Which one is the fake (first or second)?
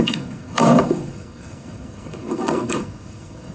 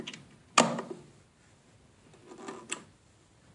first